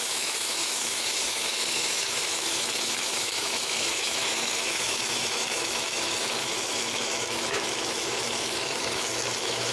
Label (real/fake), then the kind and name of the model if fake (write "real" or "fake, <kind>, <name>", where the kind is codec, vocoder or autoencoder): fake, autoencoder, DAC-VAE